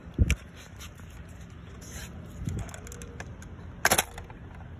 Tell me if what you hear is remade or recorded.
recorded